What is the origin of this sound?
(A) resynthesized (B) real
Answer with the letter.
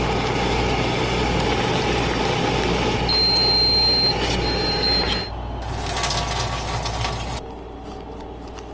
B